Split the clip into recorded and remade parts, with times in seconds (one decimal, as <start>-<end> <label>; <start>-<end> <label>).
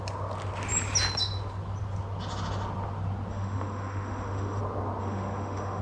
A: 0.0-3.3 recorded; 3.3-4.6 remade; 4.6-5.0 recorded; 5.0-5.8 remade